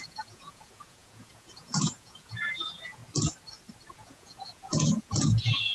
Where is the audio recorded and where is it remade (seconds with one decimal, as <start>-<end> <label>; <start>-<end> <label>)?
0.0-3.0 remade; 3.0-3.9 recorded; 3.9-5.7 remade